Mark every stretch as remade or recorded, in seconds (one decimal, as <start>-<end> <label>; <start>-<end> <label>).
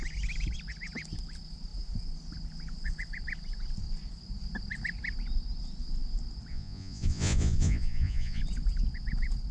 0.0-6.5 recorded; 6.5-8.4 remade; 8.4-9.5 recorded